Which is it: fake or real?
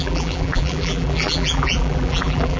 fake